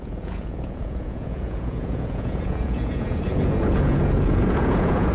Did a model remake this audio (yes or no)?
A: yes